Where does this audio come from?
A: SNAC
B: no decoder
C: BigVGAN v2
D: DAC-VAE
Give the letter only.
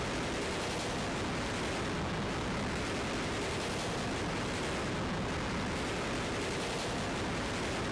B